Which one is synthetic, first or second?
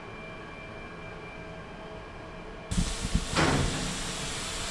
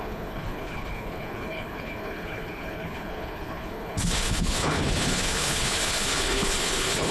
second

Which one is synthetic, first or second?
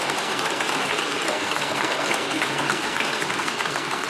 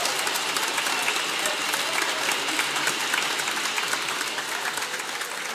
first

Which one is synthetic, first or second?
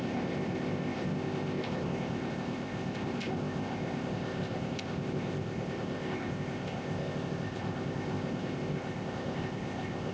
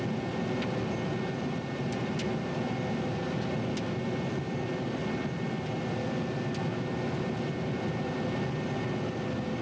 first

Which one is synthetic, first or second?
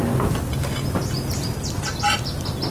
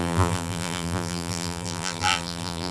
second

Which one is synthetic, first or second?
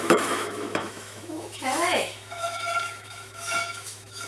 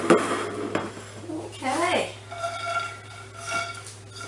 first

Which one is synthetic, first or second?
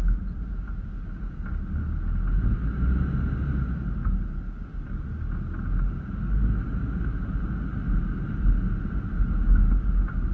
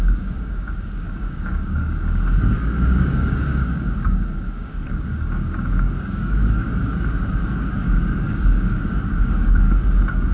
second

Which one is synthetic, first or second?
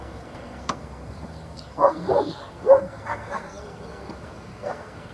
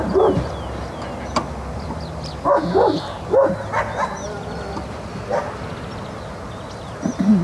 first